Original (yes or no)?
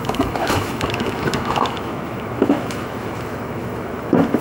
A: no